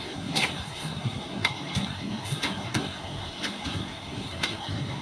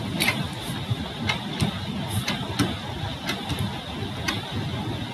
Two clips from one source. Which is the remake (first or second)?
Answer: first